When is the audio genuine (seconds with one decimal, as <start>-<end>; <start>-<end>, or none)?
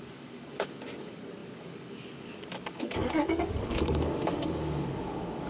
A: none